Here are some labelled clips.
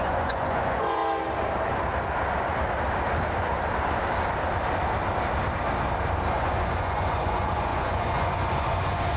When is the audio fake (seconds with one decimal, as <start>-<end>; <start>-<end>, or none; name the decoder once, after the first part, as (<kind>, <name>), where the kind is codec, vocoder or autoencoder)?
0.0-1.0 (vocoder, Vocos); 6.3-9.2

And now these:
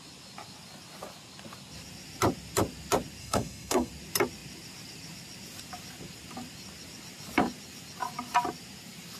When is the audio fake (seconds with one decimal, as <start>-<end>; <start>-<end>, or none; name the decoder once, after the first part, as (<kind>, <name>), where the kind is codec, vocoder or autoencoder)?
3.2-3.9 (codec, SNAC)

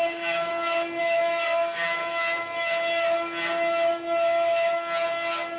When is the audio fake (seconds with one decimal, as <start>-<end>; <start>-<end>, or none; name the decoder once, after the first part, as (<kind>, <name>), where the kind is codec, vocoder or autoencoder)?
0.0-0.5 (codec, DAC); 1.0-2.0